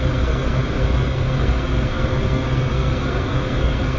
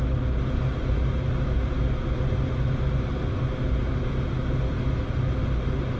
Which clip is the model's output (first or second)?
first